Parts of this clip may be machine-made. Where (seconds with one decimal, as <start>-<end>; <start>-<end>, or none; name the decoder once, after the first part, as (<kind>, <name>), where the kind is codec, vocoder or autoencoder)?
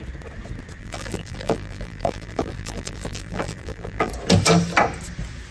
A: 0.8-4.1 (vocoder, BigVGAN v2)